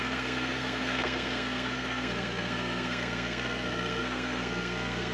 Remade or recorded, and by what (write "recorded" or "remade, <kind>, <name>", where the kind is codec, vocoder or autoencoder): remade, codec, SNAC